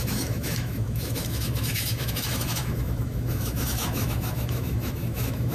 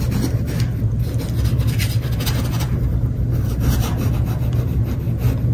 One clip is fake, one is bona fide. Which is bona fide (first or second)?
second